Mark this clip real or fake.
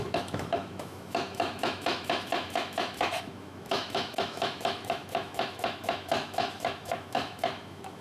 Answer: fake